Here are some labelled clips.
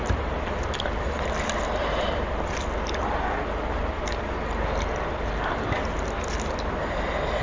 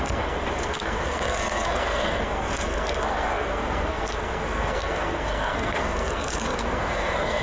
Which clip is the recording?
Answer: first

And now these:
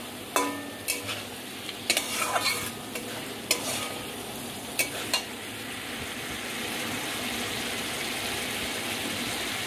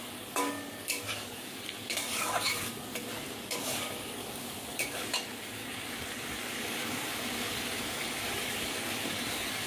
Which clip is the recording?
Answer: first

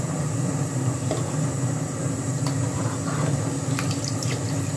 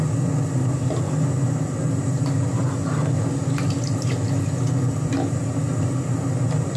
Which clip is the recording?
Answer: second